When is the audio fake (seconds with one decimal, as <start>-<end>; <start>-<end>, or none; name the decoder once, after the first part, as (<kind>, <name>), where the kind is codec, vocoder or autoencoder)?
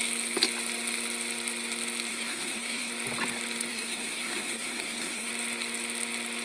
2.1-2.9 (codec, SNAC); 3.7-5.3